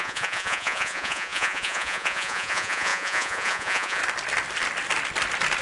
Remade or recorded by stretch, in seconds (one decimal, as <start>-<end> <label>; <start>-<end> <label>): 0.0-4.0 remade; 4.0-5.6 recorded